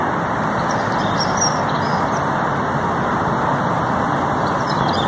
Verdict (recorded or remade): recorded